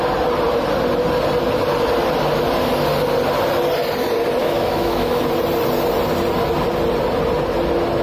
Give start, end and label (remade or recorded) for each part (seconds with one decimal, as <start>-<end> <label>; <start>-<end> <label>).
0.0-4.4 recorded; 4.4-5.2 remade; 5.2-8.0 recorded